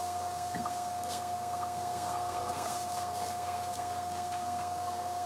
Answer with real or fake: fake